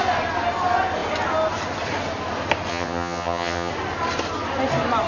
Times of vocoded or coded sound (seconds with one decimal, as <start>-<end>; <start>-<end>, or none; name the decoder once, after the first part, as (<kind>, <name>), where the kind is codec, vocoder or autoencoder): 2.7-3.7 (vocoder, HiFi-GAN)